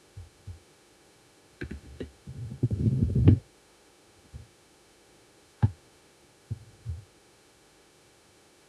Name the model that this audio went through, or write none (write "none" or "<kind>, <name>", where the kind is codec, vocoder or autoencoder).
autoencoder, DAC-VAE